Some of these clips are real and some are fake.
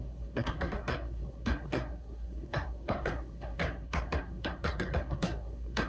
fake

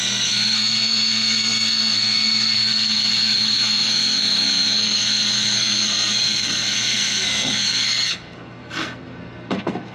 fake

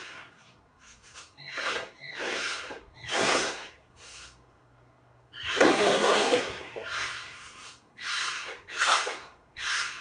fake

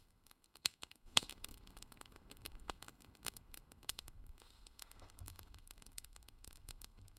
fake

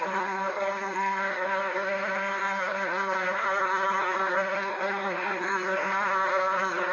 fake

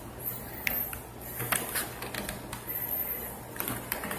real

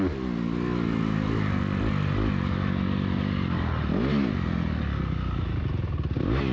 real